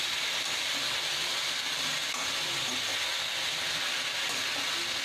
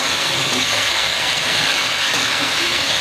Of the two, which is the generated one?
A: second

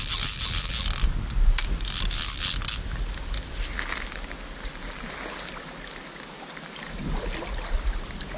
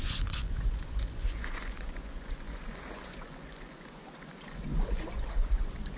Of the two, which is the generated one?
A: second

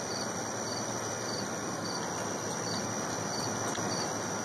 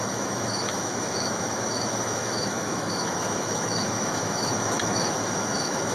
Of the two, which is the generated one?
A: second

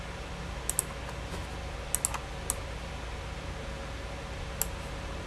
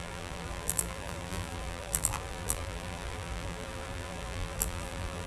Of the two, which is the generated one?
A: second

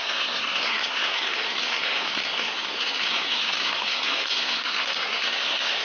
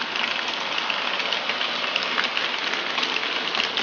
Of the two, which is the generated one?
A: first